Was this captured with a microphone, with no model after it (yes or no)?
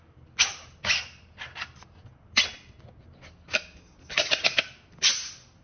yes